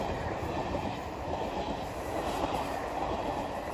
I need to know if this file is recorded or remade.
remade